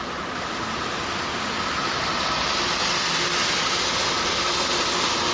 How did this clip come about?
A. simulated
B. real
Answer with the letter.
B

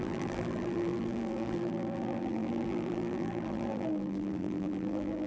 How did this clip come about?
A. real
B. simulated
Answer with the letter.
B